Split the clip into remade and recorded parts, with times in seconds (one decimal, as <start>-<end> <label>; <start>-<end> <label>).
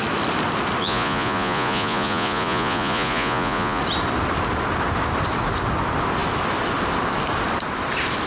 0.0-0.8 recorded; 0.8-3.8 remade; 3.8-8.3 recorded